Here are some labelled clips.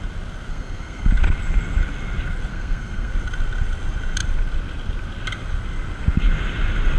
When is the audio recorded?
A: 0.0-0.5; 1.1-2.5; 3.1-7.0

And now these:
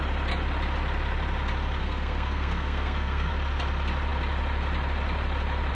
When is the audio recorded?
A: 0.0-1.8; 3.3-5.7

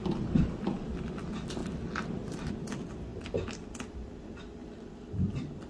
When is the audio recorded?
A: 0.0-5.7

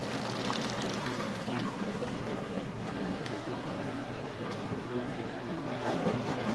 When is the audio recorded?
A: 0.0-1.0